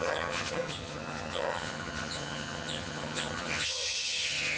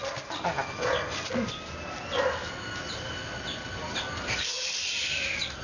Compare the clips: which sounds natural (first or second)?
second